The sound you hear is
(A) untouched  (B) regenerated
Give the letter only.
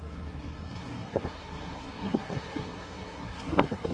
B